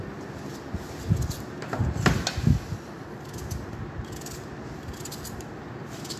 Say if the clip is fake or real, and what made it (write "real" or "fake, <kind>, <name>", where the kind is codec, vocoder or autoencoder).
real